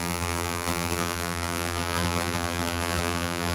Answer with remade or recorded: remade